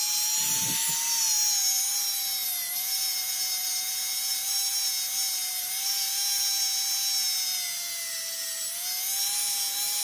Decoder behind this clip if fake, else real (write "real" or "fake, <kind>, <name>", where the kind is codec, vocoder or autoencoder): real